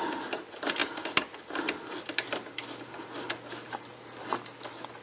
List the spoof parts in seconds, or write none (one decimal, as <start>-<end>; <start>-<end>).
none